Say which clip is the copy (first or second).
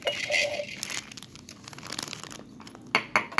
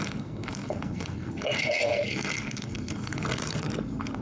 second